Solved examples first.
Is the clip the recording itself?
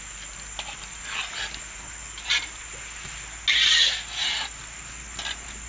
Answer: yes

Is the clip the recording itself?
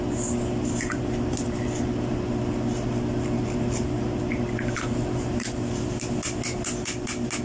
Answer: yes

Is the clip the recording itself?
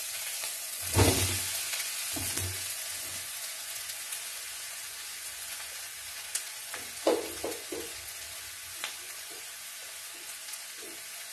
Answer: no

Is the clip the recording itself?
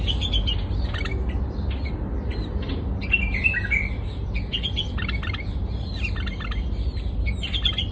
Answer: yes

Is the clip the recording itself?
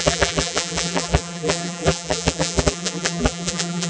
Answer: no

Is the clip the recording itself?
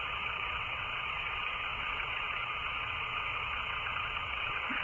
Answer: no